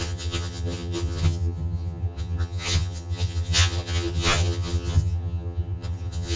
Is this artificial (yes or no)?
yes